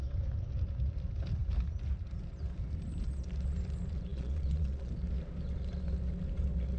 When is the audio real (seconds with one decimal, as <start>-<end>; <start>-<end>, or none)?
0.0-4.1; 4.9-6.8